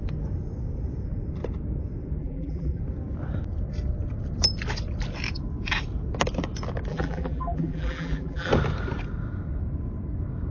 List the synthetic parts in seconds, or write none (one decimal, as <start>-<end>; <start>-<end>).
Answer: 2.2-2.8; 6.9-8.5